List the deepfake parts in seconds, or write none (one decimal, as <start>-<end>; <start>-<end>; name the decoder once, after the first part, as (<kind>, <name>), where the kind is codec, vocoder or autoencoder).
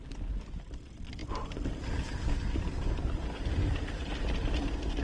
none